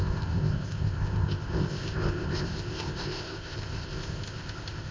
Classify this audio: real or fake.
fake